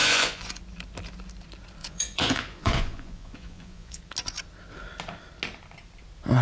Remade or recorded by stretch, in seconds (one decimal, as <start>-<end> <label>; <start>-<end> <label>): 0.0-0.6 remade; 0.6-1.8 recorded; 1.8-4.0 remade; 4.0-6.4 recorded

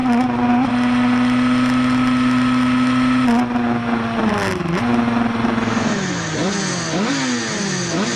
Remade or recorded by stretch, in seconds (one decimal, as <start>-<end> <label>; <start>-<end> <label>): 0.0-8.2 recorded

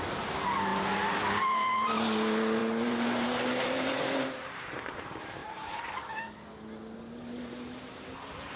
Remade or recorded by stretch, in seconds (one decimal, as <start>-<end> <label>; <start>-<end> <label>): 0.0-2.6 recorded; 2.6-5.0 remade; 5.0-5.4 recorded; 5.4-5.9 remade; 5.9-8.6 recorded

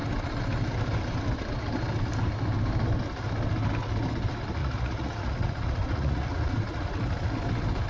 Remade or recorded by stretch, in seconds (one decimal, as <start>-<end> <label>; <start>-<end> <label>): 0.0-4.6 recorded; 4.6-7.0 remade; 7.0-7.9 recorded

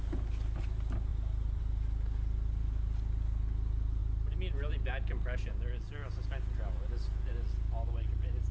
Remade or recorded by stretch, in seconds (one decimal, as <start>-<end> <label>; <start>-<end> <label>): 0.0-1.1 recorded; 1.1-1.6 remade; 1.6-8.5 recorded